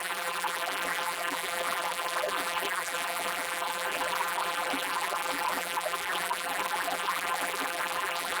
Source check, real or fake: fake